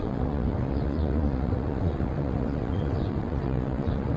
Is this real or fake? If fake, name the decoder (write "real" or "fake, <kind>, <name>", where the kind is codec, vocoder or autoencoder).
fake, vocoder, WaveNeXt